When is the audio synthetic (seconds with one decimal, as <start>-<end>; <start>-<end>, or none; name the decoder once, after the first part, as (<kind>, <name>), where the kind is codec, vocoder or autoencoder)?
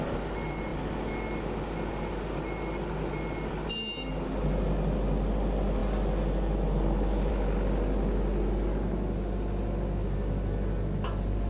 none